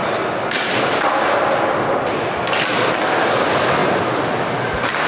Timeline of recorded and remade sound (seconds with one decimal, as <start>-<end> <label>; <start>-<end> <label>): 0.0-5.1 recorded